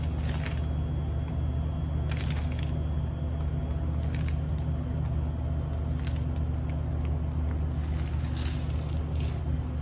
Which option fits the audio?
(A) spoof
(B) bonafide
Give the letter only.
B